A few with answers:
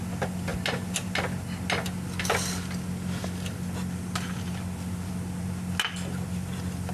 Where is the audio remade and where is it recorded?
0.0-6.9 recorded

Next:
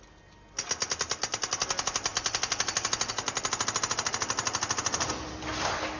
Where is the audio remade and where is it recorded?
0.0-6.0 recorded

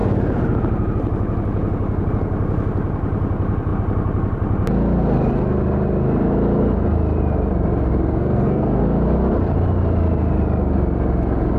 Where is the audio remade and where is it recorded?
0.0-8.1 recorded; 8.1-8.8 remade; 8.8-11.6 recorded

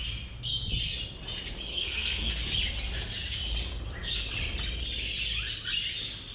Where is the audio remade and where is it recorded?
0.0-1.7 recorded; 1.7-2.3 remade; 2.3-6.3 recorded

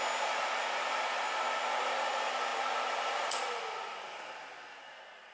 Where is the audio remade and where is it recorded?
0.0-5.3 recorded

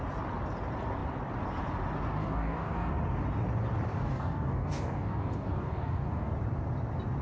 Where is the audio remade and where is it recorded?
0.0-2.2 recorded; 2.2-2.9 remade; 2.9-3.9 recorded; 3.9-6.3 remade; 6.3-7.2 recorded

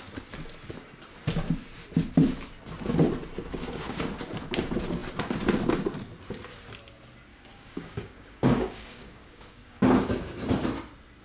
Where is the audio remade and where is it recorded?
0.0-3.5 recorded; 3.5-4.1 remade; 4.1-7.3 recorded; 7.3-9.8 remade; 9.8-11.2 recorded

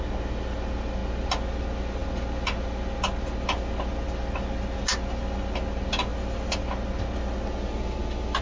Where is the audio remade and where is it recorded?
0.0-8.4 recorded